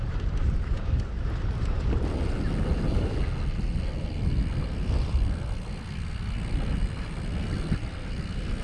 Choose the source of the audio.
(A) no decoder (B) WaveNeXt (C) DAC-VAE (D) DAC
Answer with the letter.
A